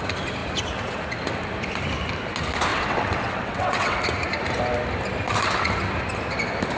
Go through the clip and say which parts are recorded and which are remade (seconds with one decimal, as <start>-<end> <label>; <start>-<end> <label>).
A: 0.0-2.7 recorded; 2.7-4.0 remade; 4.0-6.8 recorded